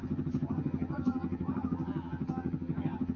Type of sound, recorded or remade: remade